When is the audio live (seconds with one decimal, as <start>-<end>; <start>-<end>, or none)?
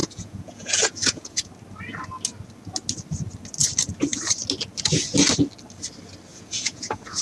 1.5-6.3